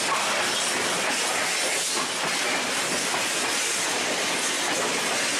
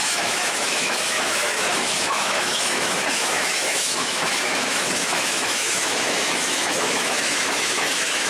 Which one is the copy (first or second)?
second